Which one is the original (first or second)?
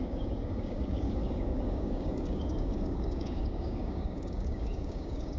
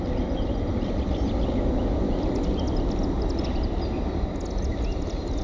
second